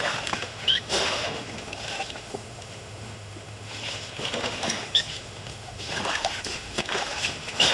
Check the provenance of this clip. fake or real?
fake